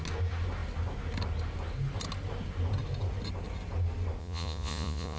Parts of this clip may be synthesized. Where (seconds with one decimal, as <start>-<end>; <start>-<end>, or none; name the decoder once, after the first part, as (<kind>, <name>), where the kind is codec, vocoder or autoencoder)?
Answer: 4.2-5.2 (vocoder, Vocos)